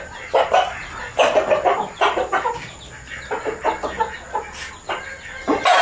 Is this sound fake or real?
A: real